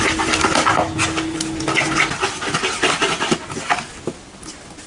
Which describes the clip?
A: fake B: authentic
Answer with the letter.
B